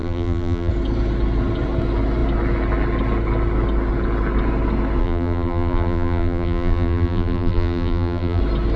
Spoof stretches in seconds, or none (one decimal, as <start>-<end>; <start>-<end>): 0.0-0.7; 5.0-8.4

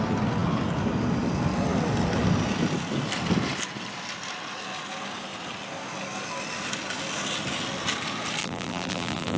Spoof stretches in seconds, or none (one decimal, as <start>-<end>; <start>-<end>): 8.4-9.4

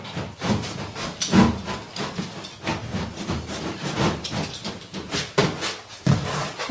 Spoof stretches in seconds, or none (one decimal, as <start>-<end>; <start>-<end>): 2.7-4.7; 5.4-6.0

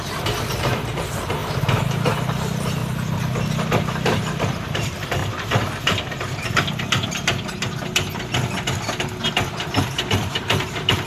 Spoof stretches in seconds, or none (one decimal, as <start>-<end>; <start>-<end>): 0.0-2.8; 3.8-5.2; 10.1-11.1

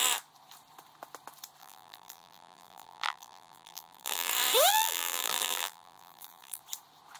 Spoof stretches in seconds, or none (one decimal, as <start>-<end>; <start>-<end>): 1.6-4.3; 4.7-6.6